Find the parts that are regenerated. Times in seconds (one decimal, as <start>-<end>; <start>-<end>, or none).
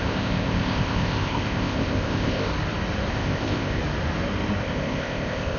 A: 0.0-2.5; 3.1-3.8; 4.6-5.6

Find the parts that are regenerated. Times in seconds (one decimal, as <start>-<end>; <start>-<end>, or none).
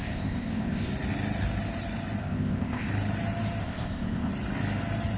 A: 0.0-0.9; 2.2-2.9; 3.6-4.3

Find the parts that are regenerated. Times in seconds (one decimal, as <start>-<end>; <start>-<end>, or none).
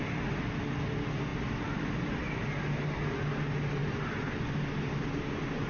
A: none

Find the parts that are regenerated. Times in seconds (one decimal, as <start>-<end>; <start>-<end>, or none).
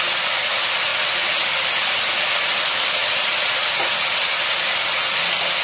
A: none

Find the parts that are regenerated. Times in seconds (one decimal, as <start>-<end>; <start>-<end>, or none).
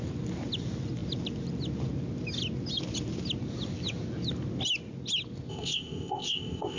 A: 5.5-6.8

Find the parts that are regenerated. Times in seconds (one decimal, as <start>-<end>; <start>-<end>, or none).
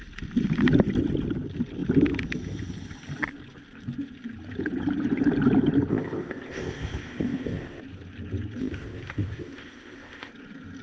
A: 5.9-7.8; 8.6-10.3